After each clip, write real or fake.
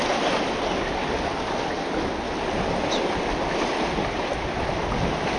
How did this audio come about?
real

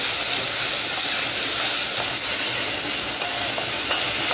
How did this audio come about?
real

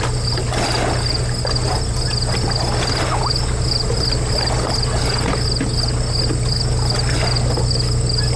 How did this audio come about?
real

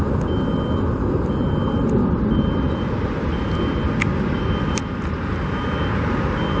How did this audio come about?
real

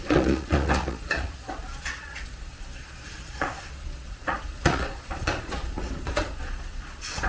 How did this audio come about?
fake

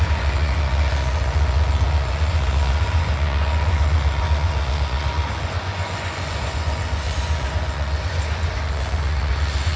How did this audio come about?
fake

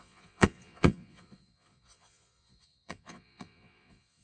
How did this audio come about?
fake